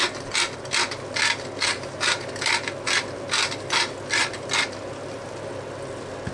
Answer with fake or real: real